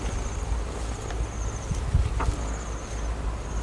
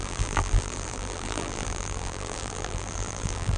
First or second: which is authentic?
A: first